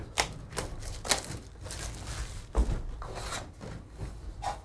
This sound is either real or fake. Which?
real